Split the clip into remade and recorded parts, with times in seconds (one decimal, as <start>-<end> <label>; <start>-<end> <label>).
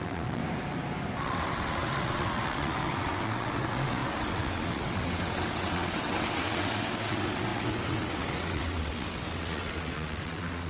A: 0.0-0.4 remade; 0.4-1.2 recorded; 1.2-10.7 remade